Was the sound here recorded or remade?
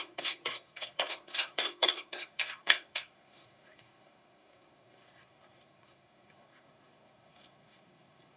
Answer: remade